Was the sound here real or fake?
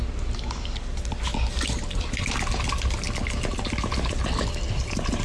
real